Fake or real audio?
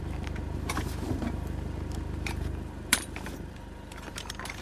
fake